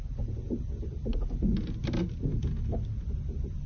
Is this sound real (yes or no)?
yes